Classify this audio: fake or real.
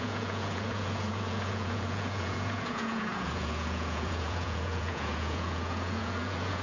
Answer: fake